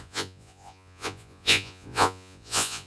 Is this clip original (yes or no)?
no